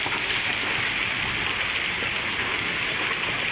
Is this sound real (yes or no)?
yes